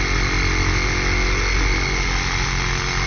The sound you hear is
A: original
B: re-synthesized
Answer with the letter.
A